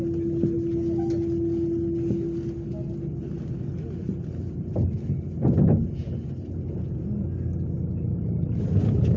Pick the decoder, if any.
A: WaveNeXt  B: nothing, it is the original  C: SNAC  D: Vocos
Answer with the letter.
B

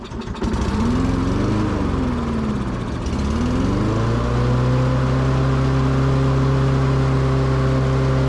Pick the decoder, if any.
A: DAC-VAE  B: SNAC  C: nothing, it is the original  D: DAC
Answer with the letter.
C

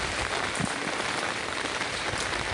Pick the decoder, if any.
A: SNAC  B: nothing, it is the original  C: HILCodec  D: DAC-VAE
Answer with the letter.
B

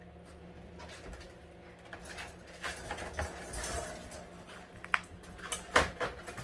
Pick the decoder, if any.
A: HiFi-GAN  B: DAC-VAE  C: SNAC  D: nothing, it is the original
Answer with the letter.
D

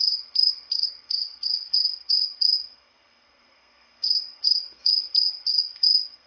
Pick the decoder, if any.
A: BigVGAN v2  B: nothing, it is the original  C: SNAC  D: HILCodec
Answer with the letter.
C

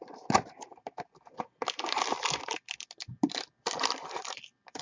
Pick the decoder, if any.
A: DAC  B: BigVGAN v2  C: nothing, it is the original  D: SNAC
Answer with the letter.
C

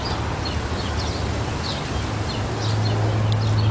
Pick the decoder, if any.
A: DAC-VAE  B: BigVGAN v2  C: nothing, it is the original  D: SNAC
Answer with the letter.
C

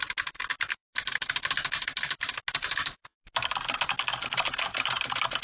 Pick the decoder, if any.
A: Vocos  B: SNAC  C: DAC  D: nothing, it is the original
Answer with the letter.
D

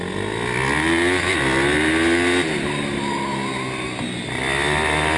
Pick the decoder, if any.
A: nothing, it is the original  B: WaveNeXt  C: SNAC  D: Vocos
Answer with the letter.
A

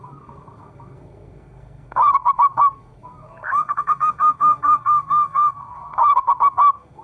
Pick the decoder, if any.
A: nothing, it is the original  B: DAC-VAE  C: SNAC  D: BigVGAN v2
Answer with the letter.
C